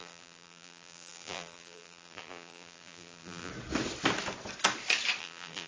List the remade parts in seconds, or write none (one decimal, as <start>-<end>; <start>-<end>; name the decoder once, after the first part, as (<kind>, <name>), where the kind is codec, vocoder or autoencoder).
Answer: 0.0-3.5 (vocoder, BigVGAN v2); 5.2-5.7